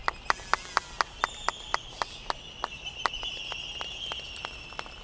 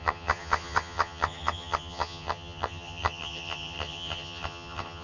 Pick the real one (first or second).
first